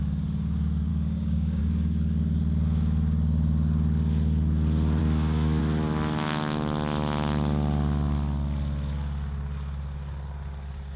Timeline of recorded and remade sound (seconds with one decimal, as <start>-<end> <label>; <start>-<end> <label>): 0.0-0.9 recorded; 0.9-1.6 remade; 1.6-5.0 recorded; 5.0-5.6 remade; 5.6-11.0 recorded